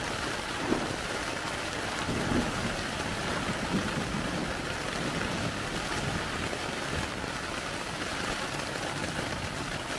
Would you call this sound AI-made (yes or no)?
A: yes